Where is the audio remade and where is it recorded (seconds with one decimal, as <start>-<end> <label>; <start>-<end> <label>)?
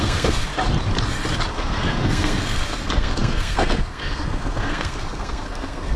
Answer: 0.0-0.5 remade; 0.5-1.5 recorded; 1.5-6.0 remade